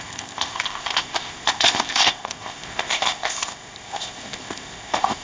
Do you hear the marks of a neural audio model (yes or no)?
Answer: yes